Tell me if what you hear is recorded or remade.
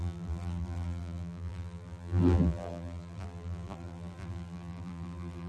remade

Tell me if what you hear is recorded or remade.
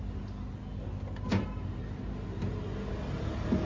recorded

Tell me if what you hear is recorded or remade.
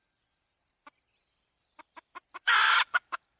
remade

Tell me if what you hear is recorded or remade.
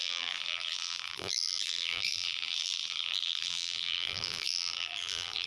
remade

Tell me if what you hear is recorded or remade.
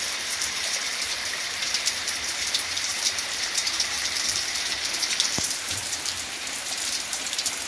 remade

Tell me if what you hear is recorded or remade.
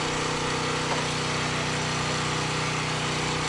recorded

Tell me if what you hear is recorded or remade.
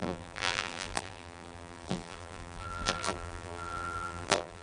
remade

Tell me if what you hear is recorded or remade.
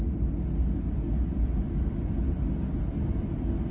recorded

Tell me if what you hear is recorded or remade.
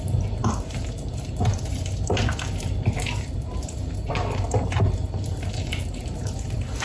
remade